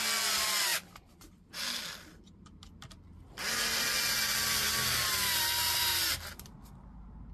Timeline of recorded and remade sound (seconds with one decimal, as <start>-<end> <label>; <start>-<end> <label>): 0.0-0.7 recorded; 0.7-1.6 remade; 1.6-5.9 recorded; 5.9-6.6 remade; 6.6-7.3 recorded

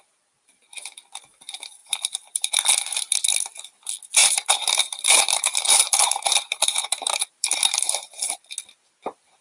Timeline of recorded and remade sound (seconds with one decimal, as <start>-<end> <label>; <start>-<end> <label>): 0.0-1.8 recorded; 1.8-2.5 remade; 2.5-4.2 recorded; 4.2-8.3 remade; 8.3-9.4 recorded

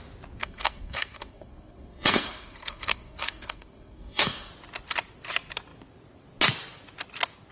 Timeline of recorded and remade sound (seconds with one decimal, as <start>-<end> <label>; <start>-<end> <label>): 0.0-0.4 recorded; 0.4-4.5 remade; 4.5-7.5 recorded